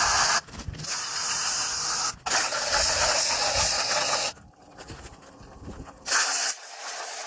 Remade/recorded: recorded